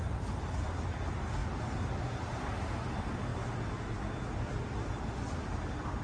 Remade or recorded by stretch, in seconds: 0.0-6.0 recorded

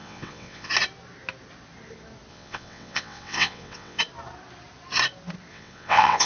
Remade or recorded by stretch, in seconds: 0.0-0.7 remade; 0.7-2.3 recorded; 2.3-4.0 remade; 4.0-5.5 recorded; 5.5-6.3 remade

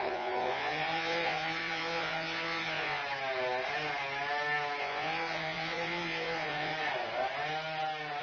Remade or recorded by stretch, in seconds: 0.0-3.0 remade; 3.0-4.8 recorded; 4.8-6.7 remade; 6.7-8.2 recorded